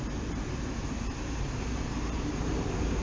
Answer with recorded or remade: remade